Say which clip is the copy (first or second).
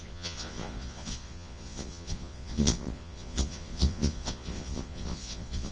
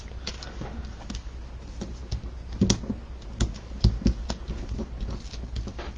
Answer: first